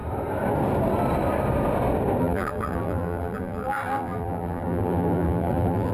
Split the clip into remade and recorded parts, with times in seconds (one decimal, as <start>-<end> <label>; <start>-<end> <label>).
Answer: 0.0-2.2 recorded; 2.2-5.9 remade